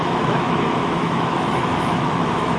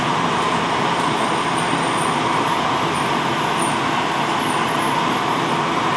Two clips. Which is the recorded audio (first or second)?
second